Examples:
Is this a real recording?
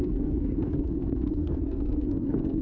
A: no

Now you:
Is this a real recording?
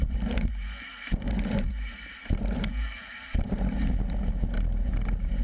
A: no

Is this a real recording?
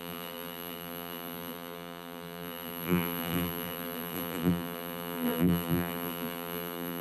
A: no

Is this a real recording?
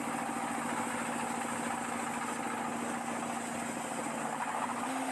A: yes